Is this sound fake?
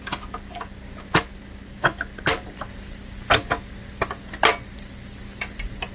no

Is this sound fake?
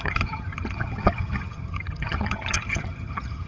yes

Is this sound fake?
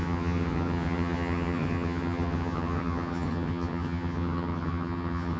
yes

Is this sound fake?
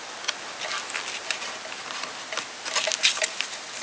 no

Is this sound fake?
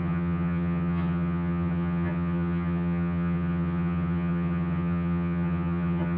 yes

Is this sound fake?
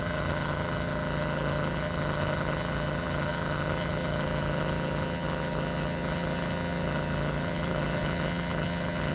yes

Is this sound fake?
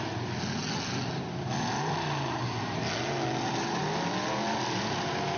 no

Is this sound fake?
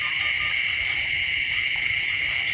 no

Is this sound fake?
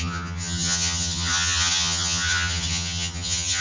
yes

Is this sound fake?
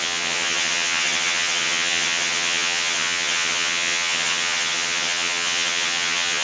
yes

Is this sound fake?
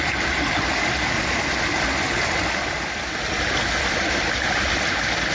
no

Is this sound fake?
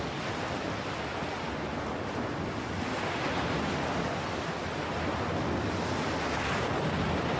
no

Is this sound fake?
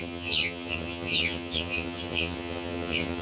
yes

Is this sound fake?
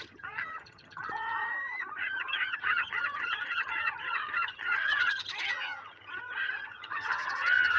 yes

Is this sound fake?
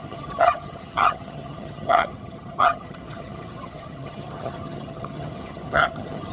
yes